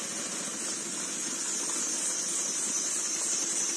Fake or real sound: real